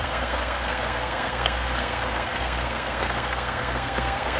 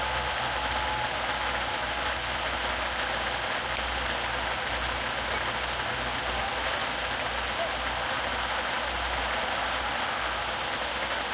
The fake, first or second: first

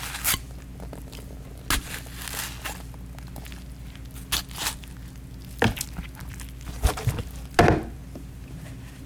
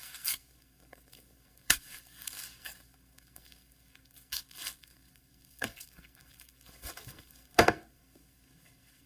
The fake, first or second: second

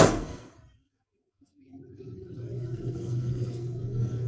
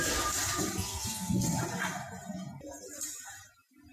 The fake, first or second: first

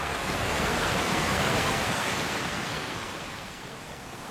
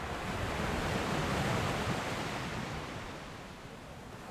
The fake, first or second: first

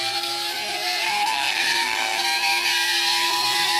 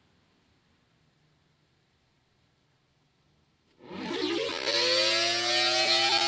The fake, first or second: first